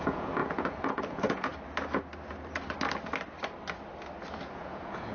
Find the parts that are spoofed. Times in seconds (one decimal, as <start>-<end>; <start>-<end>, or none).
0.0-1.5; 4.5-5.1